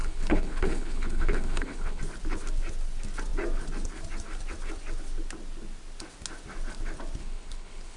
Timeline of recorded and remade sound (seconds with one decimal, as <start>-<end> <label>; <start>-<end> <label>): 0.0-2.0 remade; 2.0-7.2 recorded; 7.2-8.0 remade